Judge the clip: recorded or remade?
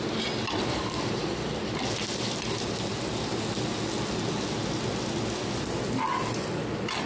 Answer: recorded